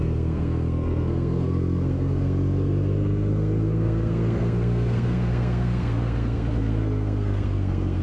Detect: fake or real fake